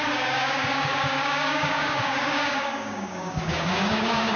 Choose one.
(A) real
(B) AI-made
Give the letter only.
B